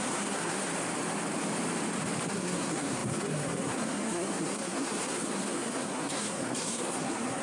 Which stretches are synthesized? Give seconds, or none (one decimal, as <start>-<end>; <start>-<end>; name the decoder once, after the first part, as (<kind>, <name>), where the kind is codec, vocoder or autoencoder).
0.0-0.7 (codec, SNAC); 2.3-7.4